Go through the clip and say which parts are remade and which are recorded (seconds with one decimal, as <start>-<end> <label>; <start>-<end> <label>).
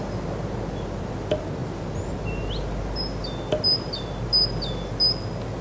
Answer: 0.0-5.6 recorded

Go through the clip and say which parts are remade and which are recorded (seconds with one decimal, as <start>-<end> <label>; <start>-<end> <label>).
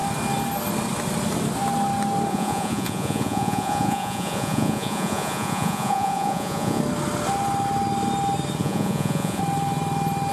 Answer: 0.0-2.3 recorded; 2.3-6.8 remade; 6.8-8.6 recorded; 8.6-9.4 remade; 9.4-10.3 recorded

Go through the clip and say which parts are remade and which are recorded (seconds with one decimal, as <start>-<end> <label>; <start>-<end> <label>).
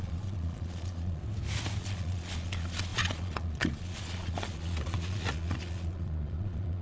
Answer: 0.0-1.2 remade; 1.2-1.8 recorded; 1.8-6.8 remade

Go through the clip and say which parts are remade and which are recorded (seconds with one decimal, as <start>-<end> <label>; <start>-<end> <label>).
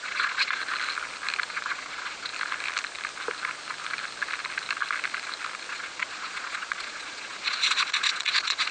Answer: 0.0-0.6 remade; 0.6-1.5 recorded; 1.5-2.3 remade; 2.3-5.7 recorded; 5.7-8.7 remade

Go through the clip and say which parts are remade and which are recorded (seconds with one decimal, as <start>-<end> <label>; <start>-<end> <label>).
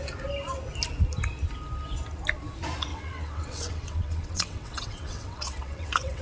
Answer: 0.0-2.9 recorded; 2.9-6.2 remade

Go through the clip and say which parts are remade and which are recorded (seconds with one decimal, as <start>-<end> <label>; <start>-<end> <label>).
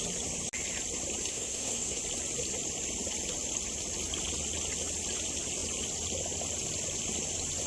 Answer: 0.0-1.3 recorded; 1.3-2.0 remade; 2.0-7.7 recorded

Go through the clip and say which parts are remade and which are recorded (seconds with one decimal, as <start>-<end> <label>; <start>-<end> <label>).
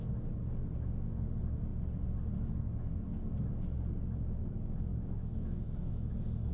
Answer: 0.0-4.9 recorded; 4.9-6.1 remade; 6.1-6.5 recorded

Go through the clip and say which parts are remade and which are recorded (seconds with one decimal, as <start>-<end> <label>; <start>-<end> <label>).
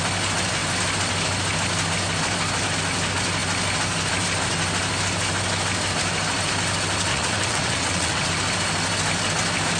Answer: 0.0-7.1 recorded; 7.1-8.3 remade; 8.3-9.8 recorded